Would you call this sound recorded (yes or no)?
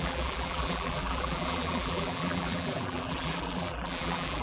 no